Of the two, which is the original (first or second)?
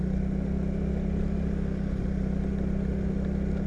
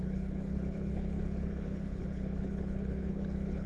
first